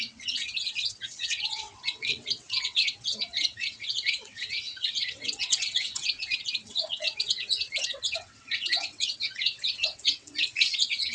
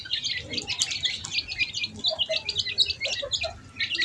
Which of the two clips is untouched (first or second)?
second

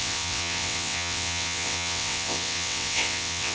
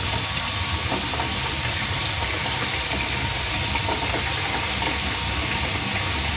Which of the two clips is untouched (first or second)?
second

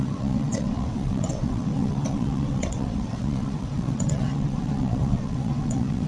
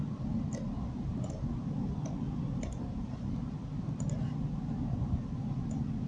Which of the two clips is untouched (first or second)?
second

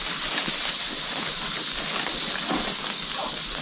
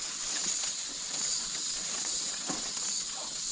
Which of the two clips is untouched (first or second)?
first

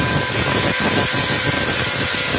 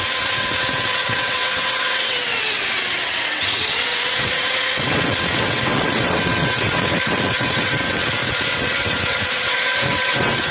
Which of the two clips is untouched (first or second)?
first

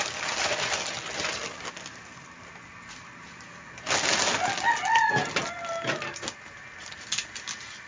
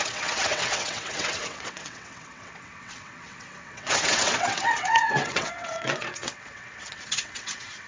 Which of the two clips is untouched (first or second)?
first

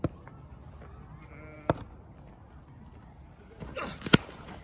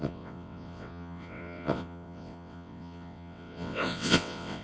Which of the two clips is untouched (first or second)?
first